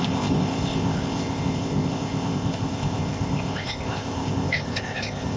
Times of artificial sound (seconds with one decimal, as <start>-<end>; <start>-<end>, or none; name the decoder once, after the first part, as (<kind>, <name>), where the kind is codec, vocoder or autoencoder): 0.0-5.4 (codec, ZipCodec)